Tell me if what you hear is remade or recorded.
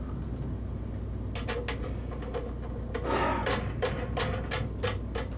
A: recorded